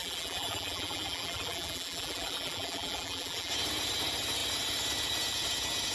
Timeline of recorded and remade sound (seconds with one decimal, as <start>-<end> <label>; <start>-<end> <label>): 0.0-3.5 remade; 3.5-5.9 recorded